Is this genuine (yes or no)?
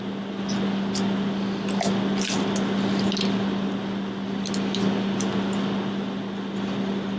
yes